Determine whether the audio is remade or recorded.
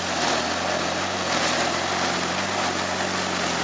recorded